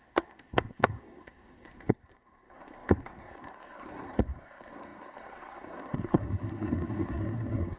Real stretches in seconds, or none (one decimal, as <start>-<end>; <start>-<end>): none